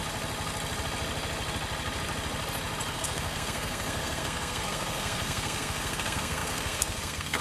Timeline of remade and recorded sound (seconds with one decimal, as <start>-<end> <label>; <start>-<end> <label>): 0.0-2.9 recorded; 2.9-7.4 remade